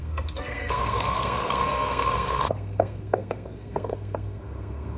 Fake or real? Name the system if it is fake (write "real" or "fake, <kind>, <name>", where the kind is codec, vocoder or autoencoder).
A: fake, codec, SNAC